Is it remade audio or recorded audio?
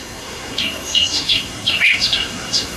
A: remade